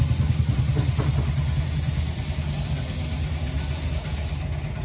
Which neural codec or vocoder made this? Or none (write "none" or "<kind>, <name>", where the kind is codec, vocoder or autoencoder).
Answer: none